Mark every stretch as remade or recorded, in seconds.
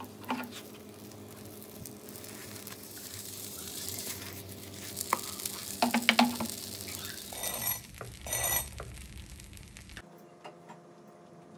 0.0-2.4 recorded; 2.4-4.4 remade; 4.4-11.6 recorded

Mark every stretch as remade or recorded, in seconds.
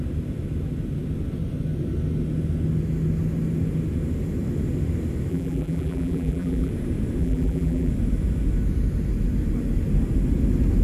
0.0-5.3 recorded; 5.3-6.7 remade; 6.7-7.2 recorded; 7.2-7.9 remade; 7.9-10.8 recorded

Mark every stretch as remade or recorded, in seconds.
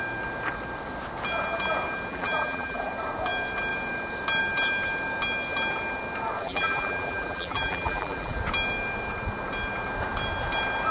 0.0-2.1 recorded; 2.1-2.9 remade; 2.9-6.4 recorded; 6.4-8.4 remade; 8.4-10.9 recorded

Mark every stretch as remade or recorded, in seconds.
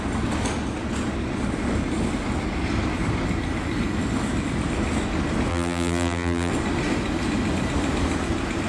0.0-5.5 recorded; 5.5-6.5 remade; 6.5-8.7 recorded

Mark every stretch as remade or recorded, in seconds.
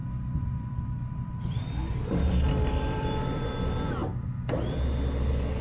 0.0-4.0 remade; 4.0-5.6 recorded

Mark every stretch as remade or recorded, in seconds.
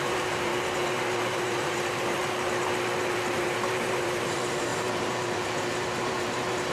0.0-0.5 remade; 0.5-1.2 recorded; 1.2-2.2 remade; 2.2-3.3 recorded; 3.3-6.7 remade